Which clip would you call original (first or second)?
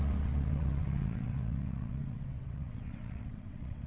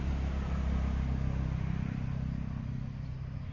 second